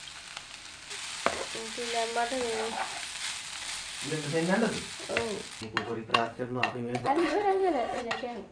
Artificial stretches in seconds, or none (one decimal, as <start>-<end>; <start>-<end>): 6.1-8.0